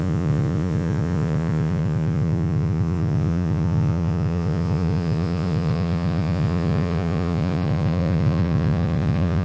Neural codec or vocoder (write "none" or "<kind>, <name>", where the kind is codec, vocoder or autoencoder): vocoder, Vocos